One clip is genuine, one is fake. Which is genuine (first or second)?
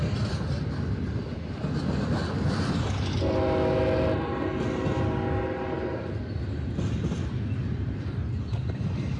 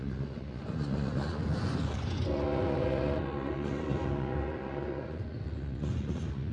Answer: first